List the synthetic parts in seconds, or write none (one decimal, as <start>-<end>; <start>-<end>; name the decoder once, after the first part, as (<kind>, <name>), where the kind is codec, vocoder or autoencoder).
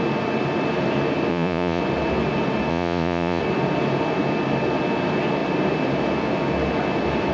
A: 1.3-1.8 (vocoder, Vocos); 2.7-3.4